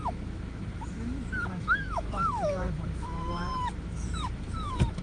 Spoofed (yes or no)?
yes